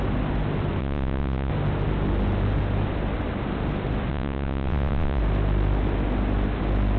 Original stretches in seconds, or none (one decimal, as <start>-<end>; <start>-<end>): 0.0-0.8; 1.5-4.1; 5.2-7.0